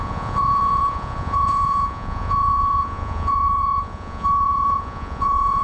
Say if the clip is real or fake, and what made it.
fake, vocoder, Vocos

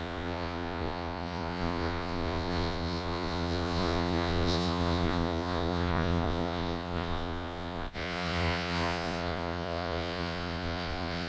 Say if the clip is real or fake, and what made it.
fake, vocoder, Vocos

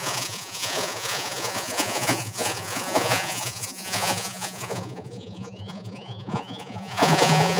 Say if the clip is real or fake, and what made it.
fake, vocoder, Vocos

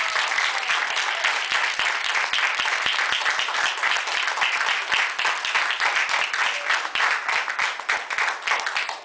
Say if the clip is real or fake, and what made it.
real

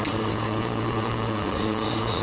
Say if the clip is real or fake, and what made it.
fake, vocoder, Vocos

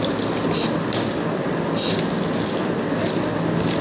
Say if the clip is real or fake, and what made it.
real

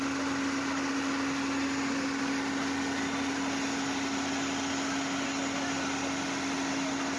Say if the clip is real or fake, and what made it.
real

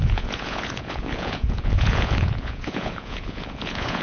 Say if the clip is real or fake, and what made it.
fake, vocoder, Vocos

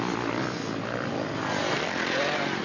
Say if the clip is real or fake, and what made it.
real